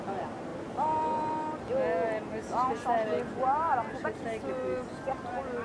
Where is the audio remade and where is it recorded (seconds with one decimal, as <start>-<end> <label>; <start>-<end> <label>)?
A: 0.0-5.6 recorded